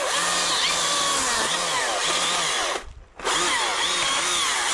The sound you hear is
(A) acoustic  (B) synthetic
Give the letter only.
A